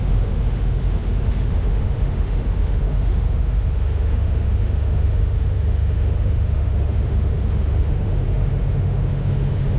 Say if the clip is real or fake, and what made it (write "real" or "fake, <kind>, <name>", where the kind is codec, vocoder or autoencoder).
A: fake, autoencoder, DAC-VAE